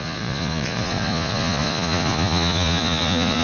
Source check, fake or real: fake